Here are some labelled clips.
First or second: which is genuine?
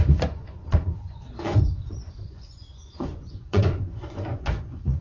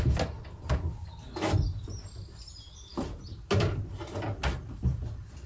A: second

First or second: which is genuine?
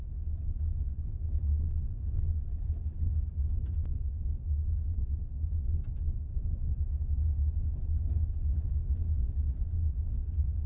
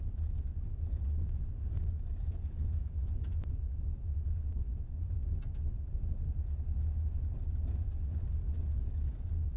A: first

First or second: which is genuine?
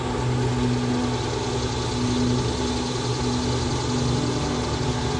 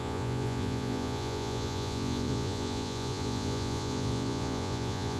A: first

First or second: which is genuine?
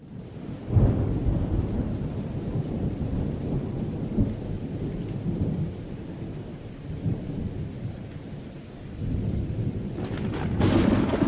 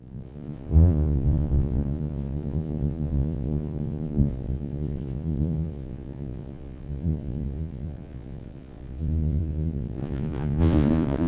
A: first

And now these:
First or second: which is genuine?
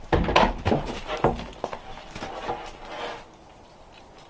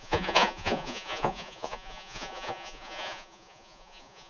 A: first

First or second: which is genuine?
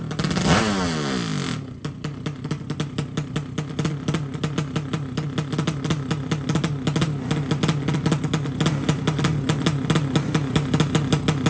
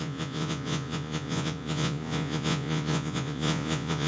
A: first